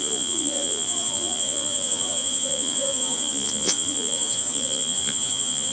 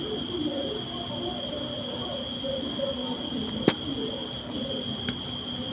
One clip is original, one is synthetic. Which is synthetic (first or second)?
first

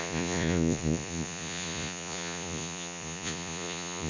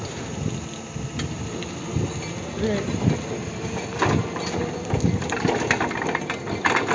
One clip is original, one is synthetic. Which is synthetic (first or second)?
first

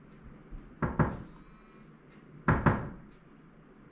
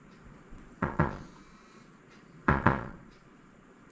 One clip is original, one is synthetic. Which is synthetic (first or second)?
second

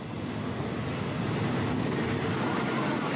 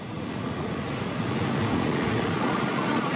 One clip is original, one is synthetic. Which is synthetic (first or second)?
second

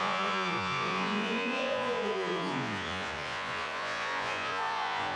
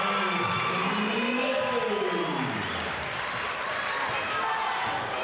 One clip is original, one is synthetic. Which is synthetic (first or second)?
first